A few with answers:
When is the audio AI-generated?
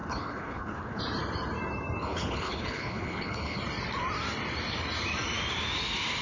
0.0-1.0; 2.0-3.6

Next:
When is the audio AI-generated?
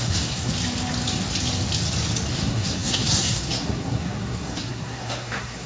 0.0-0.5; 2.3-5.7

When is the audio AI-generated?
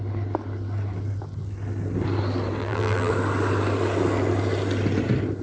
2.6-3.1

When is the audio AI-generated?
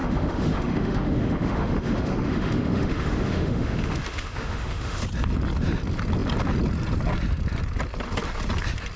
0.0-5.0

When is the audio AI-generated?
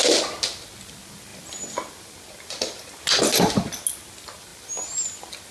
none